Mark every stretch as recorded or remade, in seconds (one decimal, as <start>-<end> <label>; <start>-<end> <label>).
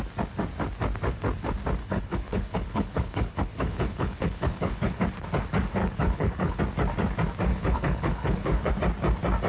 0.0-1.8 recorded; 1.8-5.0 remade; 5.0-5.8 recorded; 5.8-6.6 remade; 6.6-7.5 recorded; 7.5-8.7 remade; 8.7-9.5 recorded